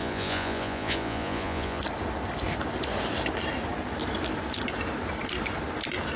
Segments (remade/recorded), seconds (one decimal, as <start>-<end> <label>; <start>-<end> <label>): 0.0-1.8 remade; 1.8-6.2 recorded